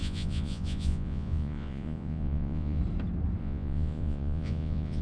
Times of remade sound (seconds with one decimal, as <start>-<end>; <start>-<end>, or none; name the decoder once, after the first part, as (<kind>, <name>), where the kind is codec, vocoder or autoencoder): 0.0-2.8 (vocoder, Vocos); 3.4-5.0